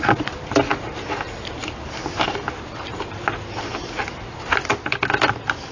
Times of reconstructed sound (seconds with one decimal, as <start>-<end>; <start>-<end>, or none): none